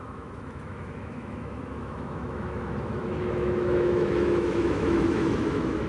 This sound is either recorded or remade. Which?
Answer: remade